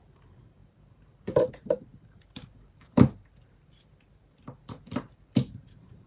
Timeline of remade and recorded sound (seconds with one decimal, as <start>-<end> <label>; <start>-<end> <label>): 0.0-6.1 remade